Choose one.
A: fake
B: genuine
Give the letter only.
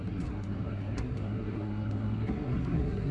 A